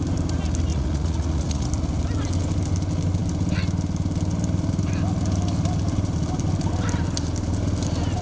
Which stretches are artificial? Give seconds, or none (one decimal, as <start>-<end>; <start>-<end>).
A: 0.7-1.7